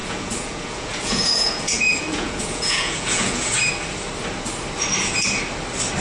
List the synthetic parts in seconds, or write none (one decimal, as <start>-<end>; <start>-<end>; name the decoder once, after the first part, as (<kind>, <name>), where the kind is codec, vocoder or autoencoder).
0.0-3.6 (vocoder, Vocos)